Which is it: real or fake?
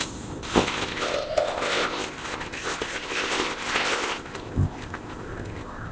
fake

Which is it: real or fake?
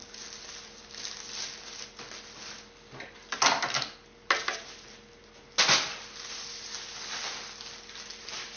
real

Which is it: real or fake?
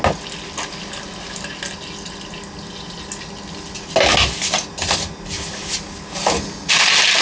real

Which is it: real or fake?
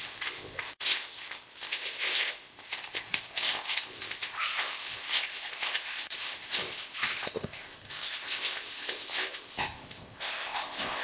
fake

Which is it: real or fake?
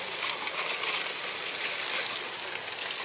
real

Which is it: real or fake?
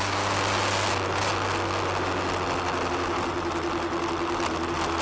real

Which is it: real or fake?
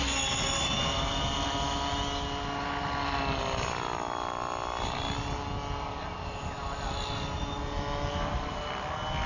real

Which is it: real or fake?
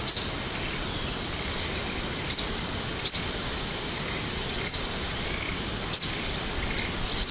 real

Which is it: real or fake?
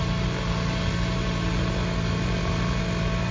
real